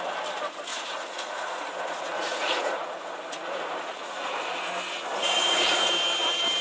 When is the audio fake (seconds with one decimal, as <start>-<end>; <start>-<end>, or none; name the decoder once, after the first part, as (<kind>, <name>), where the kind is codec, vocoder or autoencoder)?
0.7-4.6 (vocoder, Vocos); 5.2-5.9